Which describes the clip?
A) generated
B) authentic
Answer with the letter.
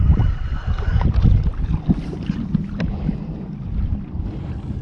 B